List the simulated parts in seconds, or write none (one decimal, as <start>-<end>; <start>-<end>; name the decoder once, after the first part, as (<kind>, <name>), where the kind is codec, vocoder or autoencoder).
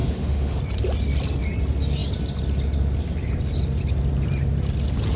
0.0-0.6 (autoencoder, DAC-VAE)